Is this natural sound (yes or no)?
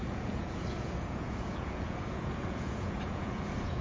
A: no